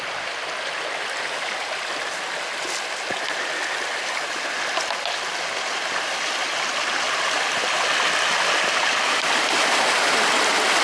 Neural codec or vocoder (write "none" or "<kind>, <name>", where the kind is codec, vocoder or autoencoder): none